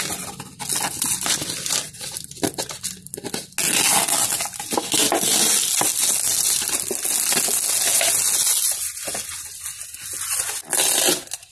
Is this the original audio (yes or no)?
yes